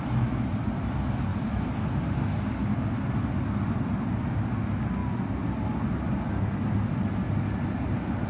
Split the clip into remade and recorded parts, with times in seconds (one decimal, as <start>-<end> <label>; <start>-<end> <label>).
0.0-8.3 recorded